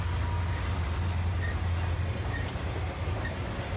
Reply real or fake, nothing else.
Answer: real